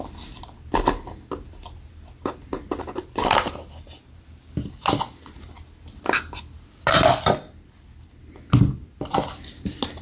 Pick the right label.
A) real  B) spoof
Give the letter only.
A